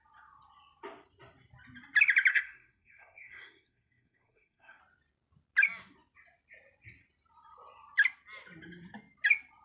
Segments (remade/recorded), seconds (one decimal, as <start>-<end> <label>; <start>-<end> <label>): 0.0-2.3 recorded; 2.3-4.8 remade; 4.8-9.6 recorded